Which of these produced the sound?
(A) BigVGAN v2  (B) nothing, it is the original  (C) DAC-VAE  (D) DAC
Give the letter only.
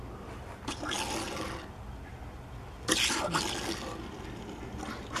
B